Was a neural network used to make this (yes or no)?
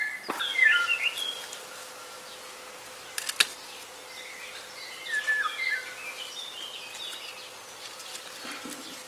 no